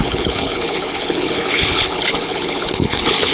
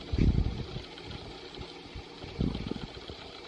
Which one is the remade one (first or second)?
first